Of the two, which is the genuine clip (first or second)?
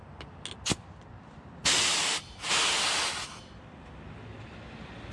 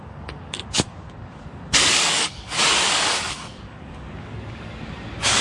first